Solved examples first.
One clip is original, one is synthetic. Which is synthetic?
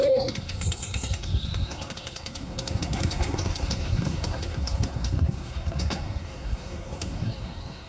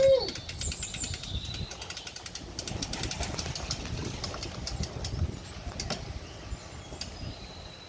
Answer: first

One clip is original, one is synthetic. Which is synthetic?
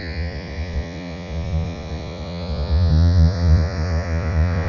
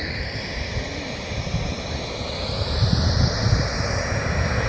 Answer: first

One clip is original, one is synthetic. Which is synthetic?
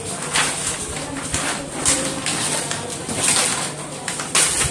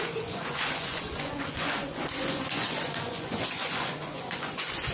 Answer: second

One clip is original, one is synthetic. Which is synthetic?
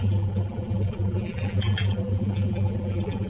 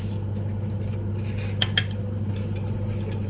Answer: first